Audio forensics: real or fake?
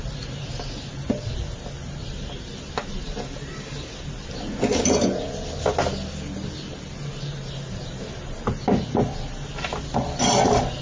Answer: real